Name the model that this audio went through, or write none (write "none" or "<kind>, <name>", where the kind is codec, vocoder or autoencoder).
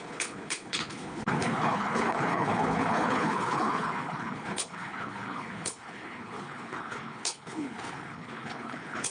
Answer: codec, HILCodec